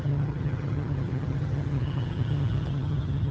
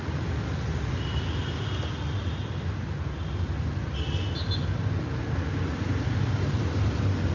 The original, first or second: second